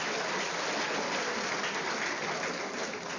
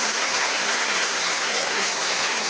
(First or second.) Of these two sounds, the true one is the first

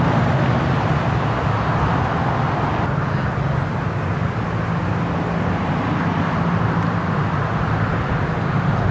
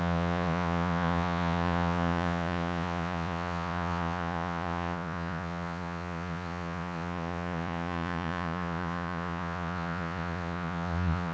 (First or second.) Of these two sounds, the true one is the first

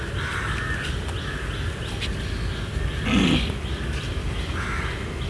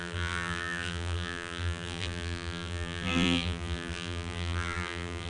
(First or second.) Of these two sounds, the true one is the first